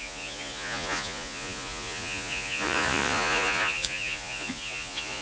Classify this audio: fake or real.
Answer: fake